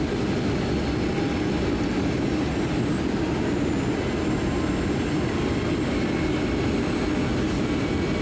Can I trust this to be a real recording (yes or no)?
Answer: yes